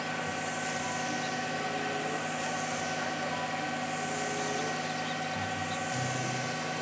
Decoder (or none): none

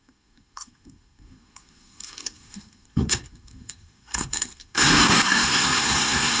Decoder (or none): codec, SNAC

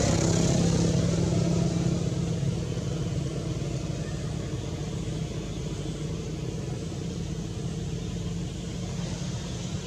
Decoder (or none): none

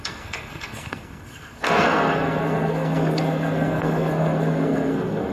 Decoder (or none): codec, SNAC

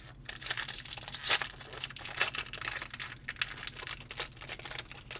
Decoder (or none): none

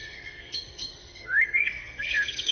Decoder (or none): codec, SNAC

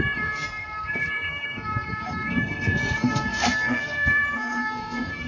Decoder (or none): codec, SNAC